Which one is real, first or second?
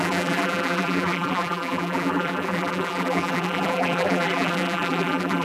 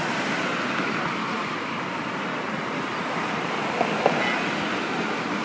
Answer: second